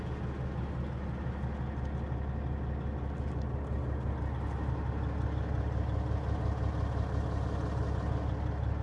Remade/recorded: recorded